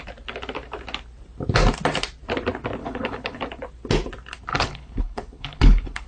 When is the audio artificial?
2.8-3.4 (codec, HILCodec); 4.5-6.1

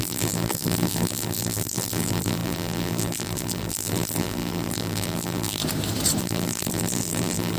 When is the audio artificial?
0.0-5.6 (vocoder, BigVGAN v2); 6.2-7.6

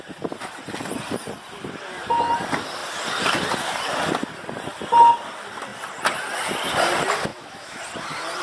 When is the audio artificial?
7.3-7.8 (autoencoder, DAC-VAE)